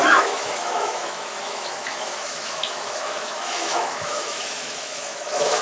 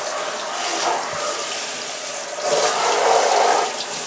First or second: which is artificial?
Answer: first